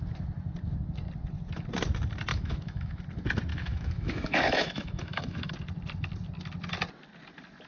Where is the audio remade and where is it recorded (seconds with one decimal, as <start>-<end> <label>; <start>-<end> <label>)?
0.0-2.3 recorded; 2.3-3.0 remade; 3.0-3.5 recorded; 3.5-5.5 remade; 5.5-7.7 recorded